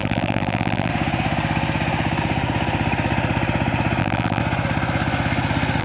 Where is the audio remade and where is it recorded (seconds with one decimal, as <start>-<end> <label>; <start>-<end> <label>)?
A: 0.0-0.9 remade; 0.9-4.0 recorded; 4.0-4.4 remade; 4.4-5.8 recorded